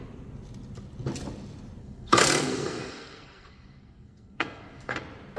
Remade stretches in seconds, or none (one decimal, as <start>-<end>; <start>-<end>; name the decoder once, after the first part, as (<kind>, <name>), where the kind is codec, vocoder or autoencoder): 1.8-5.0 (codec, SNAC)